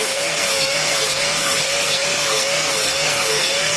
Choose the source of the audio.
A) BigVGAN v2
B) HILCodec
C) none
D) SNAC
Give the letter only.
D